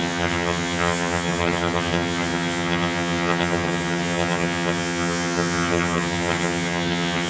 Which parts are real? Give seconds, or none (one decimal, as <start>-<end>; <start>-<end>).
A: none